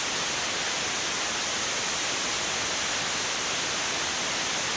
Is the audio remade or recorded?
recorded